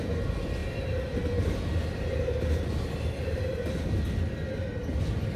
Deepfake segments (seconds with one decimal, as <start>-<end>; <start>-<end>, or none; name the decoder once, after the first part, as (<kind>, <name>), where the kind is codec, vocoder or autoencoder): none